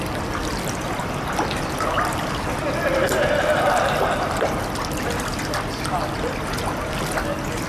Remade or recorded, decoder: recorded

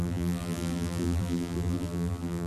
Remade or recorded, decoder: remade, vocoder, BigVGAN v2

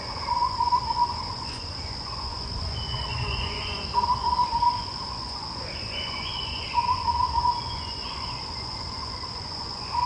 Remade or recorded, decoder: remade, vocoder, Vocos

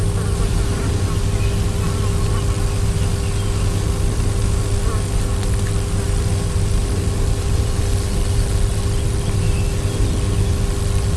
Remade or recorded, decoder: recorded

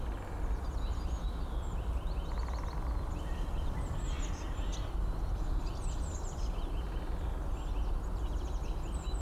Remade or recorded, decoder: recorded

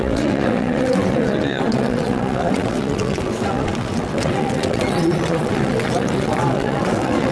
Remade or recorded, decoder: remade, vocoder, WaveNeXt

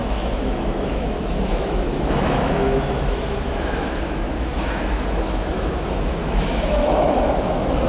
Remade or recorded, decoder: remade, autoencoder, DAC-VAE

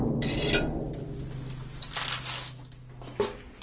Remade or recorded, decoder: recorded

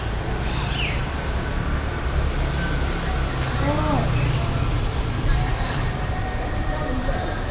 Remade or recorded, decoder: recorded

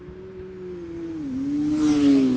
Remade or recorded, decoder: recorded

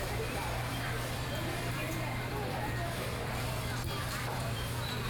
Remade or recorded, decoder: remade, vocoder, BigVGAN v2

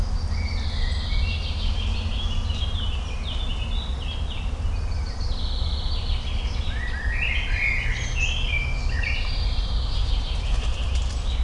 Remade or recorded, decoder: recorded